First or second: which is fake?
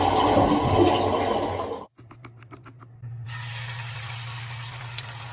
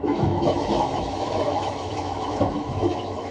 second